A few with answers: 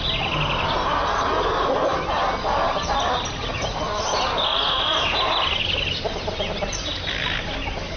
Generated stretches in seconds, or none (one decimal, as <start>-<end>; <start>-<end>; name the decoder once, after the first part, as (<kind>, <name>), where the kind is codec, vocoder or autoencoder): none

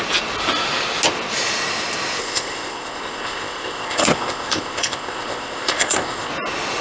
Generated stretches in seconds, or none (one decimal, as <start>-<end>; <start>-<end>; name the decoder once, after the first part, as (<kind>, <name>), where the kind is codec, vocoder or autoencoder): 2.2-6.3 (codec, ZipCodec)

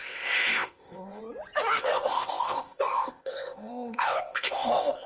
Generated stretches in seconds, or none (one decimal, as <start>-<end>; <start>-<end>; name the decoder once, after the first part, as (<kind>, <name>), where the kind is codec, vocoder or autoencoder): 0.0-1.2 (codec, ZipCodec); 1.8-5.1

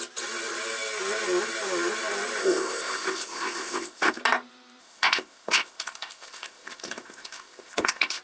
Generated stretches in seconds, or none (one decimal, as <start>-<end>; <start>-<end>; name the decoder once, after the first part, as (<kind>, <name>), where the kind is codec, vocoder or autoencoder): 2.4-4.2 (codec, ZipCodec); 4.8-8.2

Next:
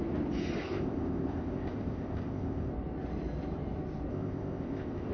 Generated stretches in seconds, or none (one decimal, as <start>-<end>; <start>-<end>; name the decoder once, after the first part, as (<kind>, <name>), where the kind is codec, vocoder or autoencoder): 0.6-2.7 (codec, ZipCodec); 4.1-5.1